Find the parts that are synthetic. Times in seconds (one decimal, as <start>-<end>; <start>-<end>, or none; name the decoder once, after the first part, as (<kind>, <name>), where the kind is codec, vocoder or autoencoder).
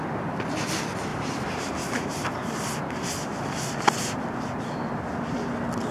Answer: 1.1-4.6 (vocoder, BigVGAN v2)